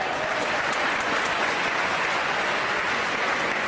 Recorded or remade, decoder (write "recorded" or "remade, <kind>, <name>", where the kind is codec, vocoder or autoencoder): remade, vocoder, Vocos